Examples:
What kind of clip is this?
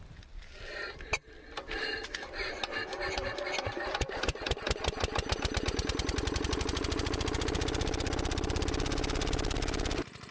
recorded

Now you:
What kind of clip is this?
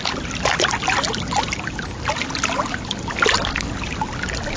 recorded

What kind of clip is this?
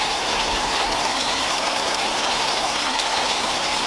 remade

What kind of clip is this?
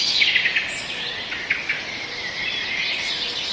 recorded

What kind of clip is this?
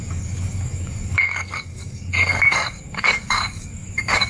remade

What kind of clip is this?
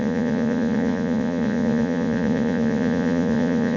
remade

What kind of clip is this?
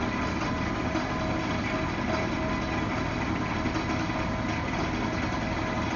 recorded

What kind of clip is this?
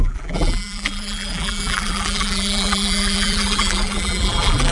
remade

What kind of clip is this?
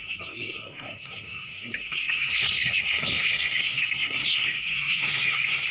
remade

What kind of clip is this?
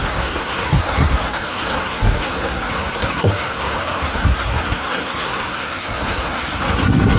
remade